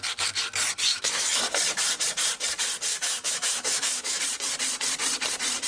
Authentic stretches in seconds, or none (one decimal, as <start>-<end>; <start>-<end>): 0.0-0.9; 1.4-2.9; 4.2-5.7